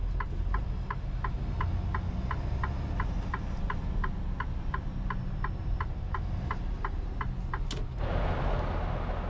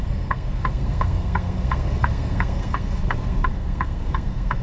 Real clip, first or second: first